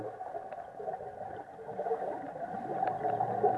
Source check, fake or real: real